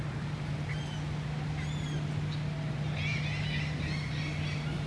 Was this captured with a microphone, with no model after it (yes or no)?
yes